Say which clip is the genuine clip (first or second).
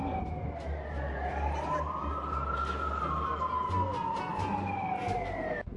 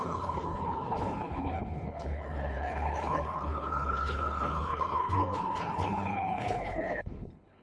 first